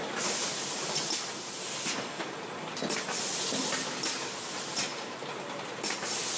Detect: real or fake real